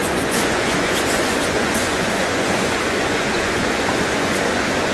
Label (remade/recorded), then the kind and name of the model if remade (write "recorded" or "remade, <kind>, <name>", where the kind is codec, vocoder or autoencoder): remade, vocoder, Vocos